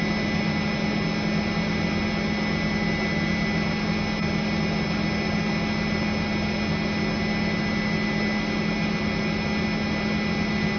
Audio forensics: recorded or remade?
recorded